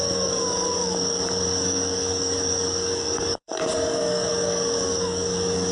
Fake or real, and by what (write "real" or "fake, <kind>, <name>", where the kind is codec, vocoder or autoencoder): fake, codec, DAC